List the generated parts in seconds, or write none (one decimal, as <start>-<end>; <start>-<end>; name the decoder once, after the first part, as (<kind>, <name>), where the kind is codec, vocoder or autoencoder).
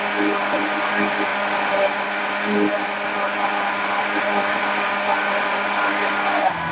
none